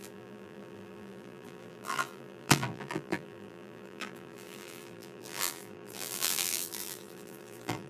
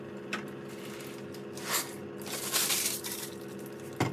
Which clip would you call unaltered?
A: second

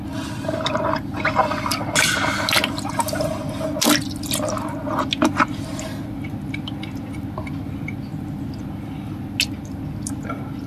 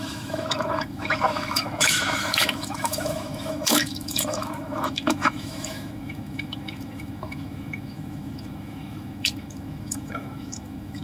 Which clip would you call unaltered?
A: first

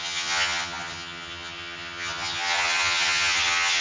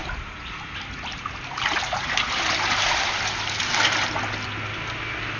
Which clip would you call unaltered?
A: second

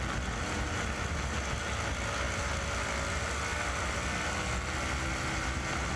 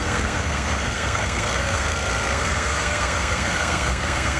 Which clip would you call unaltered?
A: first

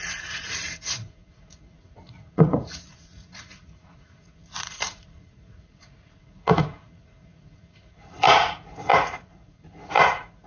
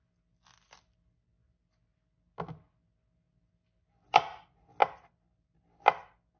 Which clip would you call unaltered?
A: second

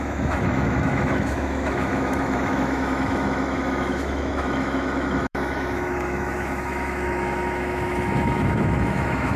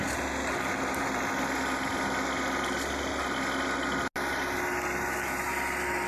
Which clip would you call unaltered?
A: second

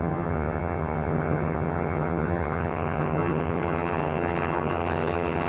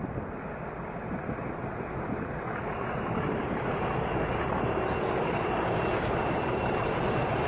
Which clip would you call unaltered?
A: second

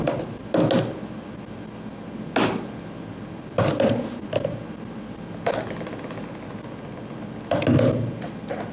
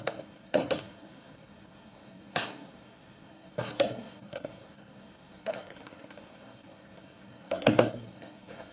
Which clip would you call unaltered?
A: first